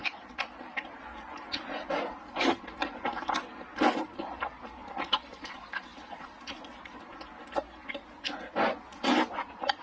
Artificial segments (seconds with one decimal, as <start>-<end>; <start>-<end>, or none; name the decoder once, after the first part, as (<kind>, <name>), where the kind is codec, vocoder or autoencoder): 0.0-1.8 (vocoder, BigVGAN v2); 4.8-5.5; 5.9-6.5